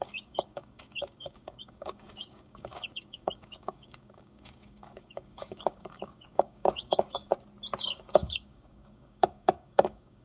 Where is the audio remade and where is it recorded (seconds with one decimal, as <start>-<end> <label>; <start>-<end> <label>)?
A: 0.0-7.3 remade; 7.3-7.8 recorded; 7.8-10.2 remade